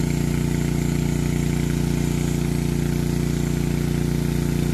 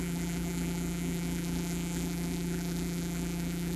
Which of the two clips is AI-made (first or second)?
second